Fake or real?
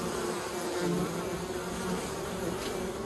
real